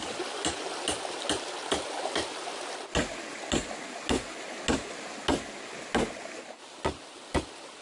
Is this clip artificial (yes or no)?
no